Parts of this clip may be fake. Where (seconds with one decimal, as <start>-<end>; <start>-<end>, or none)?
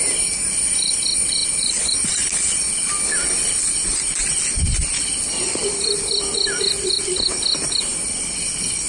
none